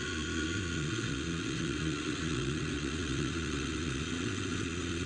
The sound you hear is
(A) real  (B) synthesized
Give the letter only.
B